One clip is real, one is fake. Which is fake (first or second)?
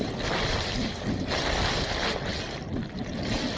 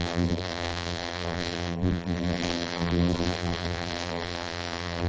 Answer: second